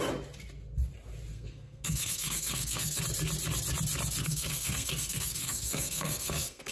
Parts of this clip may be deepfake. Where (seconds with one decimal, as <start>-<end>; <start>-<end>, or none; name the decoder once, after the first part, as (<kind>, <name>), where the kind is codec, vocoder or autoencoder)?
1.3-3.0 (codec, SNAC); 4.2-6.7